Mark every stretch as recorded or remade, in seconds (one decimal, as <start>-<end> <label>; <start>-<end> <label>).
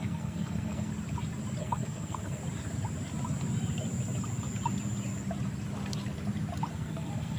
0.0-0.9 remade; 0.9-1.6 recorded; 1.6-2.4 remade; 2.4-6.7 recorded; 6.7-7.4 remade